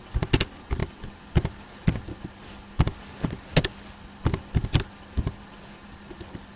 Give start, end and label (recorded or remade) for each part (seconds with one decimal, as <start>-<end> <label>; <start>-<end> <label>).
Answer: 0.0-6.6 recorded